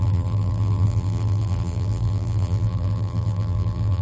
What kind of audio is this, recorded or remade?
remade